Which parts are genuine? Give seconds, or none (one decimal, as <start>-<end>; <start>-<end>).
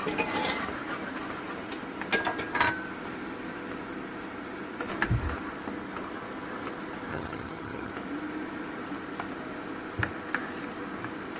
0.0-7.1; 7.9-11.4